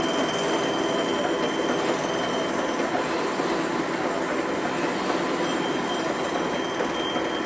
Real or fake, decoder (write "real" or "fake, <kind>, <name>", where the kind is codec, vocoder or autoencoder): real